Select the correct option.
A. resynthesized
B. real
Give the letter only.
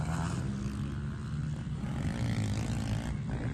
B